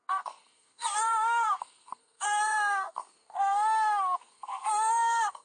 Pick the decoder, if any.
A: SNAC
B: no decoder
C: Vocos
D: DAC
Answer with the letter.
A